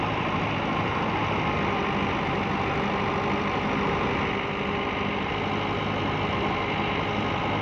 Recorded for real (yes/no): yes